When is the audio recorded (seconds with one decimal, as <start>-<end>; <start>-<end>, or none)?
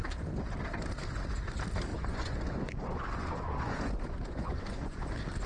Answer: 0.0-1.9; 5.1-5.5